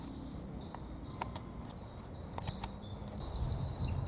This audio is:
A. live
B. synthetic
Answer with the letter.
A